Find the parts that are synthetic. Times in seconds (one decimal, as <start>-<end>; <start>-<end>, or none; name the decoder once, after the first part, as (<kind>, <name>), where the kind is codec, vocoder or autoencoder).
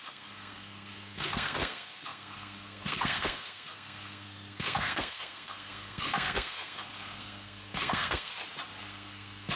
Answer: 0.0-8.3 (codec, SNAC); 8.8-9.6